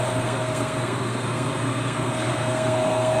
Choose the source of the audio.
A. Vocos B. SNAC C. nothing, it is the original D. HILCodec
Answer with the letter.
B